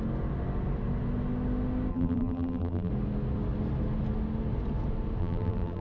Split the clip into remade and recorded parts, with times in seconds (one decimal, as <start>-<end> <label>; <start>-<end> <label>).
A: 0.0-1.9 recorded; 1.9-2.9 remade; 2.9-5.2 recorded; 5.2-5.8 remade